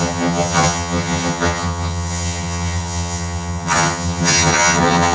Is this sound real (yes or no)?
no